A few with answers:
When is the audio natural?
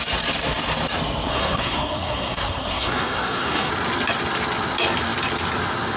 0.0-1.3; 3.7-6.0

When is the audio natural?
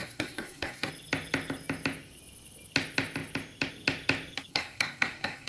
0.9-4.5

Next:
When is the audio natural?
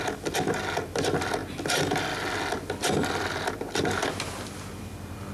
0.0-5.3